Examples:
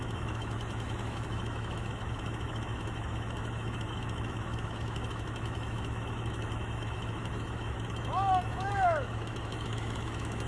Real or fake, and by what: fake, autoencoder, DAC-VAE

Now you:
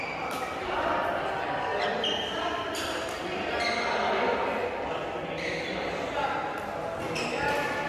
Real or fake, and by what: real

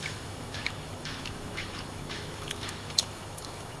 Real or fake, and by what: fake, autoencoder, DAC-VAE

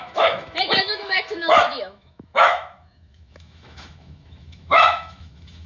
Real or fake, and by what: fake, autoencoder, DAC-VAE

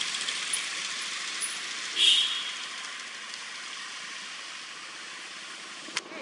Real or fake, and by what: real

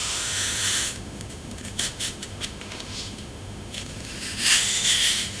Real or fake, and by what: fake, autoencoder, DAC-VAE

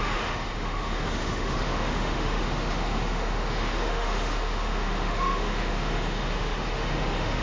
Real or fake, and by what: fake, autoencoder, DAC-VAE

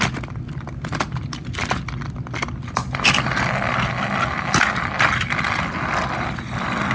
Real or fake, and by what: real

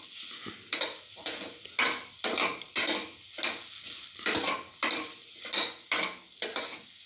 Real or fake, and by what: real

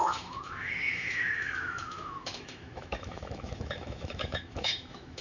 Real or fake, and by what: fake, autoencoder, DAC-VAE